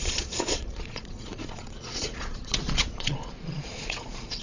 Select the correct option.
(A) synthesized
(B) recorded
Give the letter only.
A